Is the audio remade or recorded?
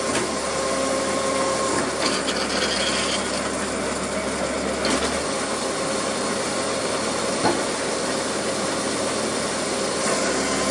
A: recorded